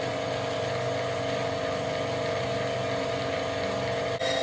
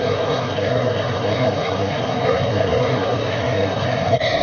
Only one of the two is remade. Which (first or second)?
second